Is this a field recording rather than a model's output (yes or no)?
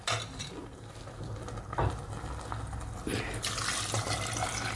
yes